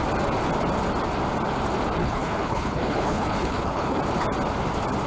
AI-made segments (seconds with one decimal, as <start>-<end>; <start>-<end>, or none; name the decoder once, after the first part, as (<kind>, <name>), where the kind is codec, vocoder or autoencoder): 2.0-4.0 (codec, HILCodec)